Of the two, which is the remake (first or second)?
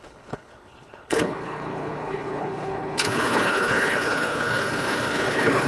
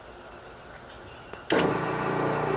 first